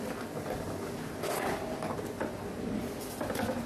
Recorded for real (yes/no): yes